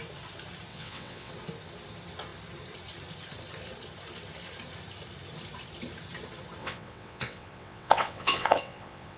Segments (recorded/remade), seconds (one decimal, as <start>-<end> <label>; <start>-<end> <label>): 0.0-0.7 recorded; 0.7-1.3 remade; 1.3-6.6 recorded; 6.6-9.2 remade